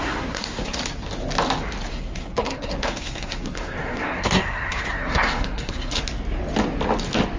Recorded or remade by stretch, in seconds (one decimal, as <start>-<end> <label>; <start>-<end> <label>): 0.0-0.8 remade; 0.8-1.9 recorded; 1.9-6.0 remade; 6.0-7.4 recorded